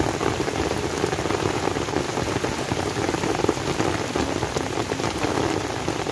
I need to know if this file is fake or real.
real